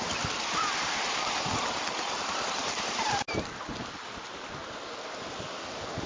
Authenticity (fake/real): real